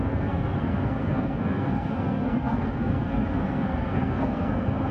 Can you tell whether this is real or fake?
fake